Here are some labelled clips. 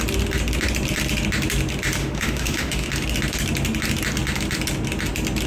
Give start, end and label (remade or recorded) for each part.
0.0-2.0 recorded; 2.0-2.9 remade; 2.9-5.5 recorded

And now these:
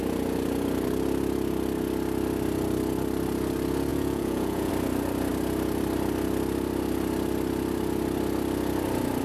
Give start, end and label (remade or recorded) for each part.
0.0-3.9 recorded; 3.9-4.7 remade; 4.7-9.2 recorded

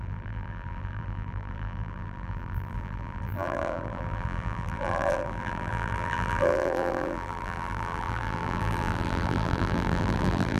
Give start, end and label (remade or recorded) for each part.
0.0-10.6 remade

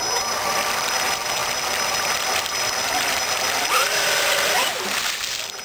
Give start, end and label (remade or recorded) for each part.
0.0-5.6 recorded